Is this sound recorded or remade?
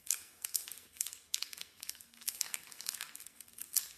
remade